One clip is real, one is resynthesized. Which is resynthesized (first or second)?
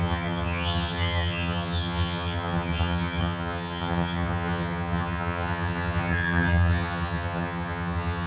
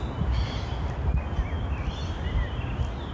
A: first